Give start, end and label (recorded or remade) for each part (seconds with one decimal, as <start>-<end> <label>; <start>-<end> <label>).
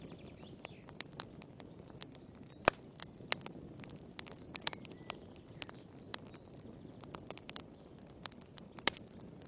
0.0-9.5 recorded